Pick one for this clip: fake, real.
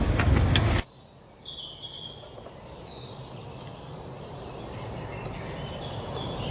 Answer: real